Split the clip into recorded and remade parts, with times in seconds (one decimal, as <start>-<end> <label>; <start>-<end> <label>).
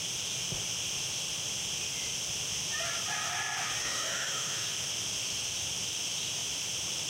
0.0-3.8 recorded; 3.8-4.7 remade; 4.7-7.1 recorded